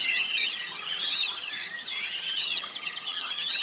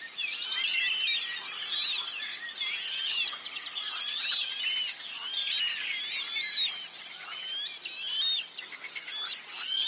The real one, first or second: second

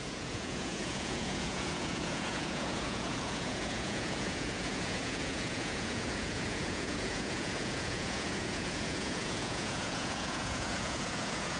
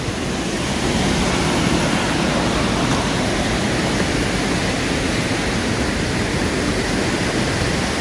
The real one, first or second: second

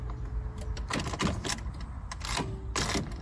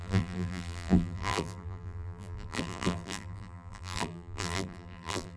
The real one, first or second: first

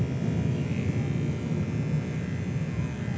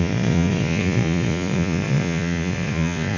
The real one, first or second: first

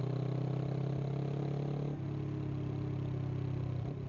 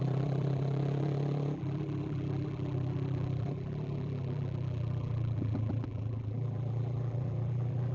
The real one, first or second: first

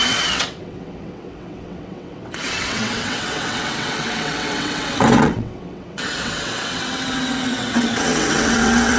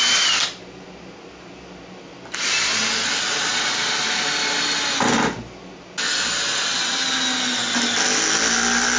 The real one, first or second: second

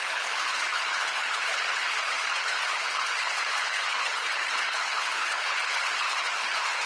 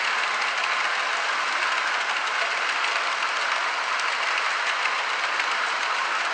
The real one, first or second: second